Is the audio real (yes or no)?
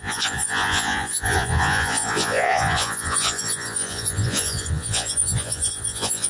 no